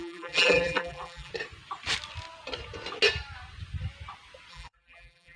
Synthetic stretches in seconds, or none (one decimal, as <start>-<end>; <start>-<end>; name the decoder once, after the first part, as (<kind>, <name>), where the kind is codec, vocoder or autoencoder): 0.0-1.3 (vocoder, BigVGAN v2); 4.5-5.4